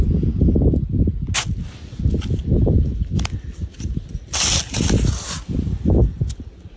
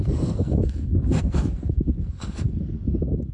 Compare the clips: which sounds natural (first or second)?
first